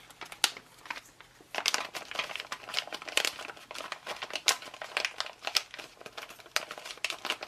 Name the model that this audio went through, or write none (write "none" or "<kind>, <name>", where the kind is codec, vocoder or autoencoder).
none